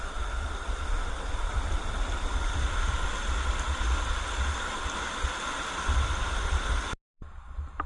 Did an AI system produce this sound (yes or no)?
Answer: no